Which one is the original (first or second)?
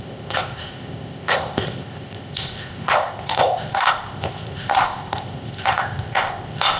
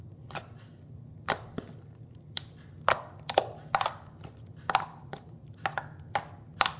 second